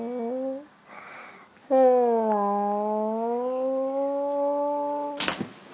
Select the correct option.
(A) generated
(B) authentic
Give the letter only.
B